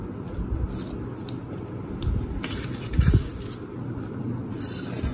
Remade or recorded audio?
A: recorded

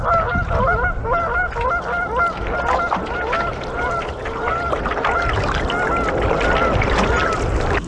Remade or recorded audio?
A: recorded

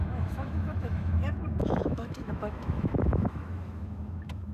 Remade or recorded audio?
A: remade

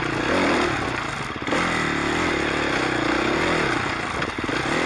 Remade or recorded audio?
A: recorded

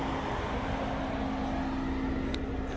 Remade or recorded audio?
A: recorded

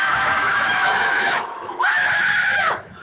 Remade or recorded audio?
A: remade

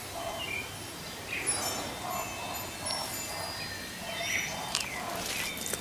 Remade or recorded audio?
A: recorded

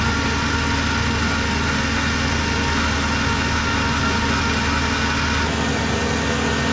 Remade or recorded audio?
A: recorded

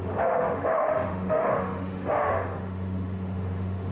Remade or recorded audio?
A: remade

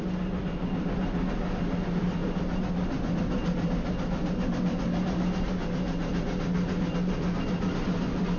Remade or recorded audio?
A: recorded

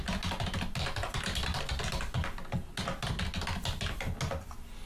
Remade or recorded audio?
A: recorded